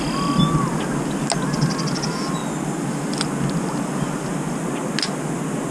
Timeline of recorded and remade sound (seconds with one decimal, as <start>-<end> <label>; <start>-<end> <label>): 0.0-5.7 recorded